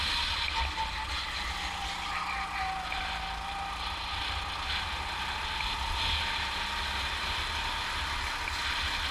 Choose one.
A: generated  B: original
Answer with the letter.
B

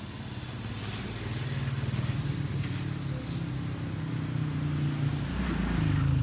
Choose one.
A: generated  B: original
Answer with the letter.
B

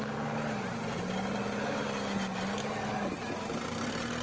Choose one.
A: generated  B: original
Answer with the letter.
B